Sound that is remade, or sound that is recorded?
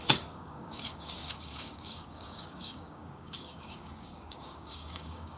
remade